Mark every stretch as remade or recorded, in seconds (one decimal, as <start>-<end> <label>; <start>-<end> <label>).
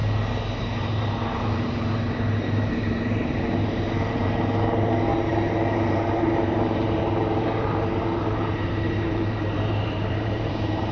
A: 0.0-0.6 recorded; 0.6-10.9 remade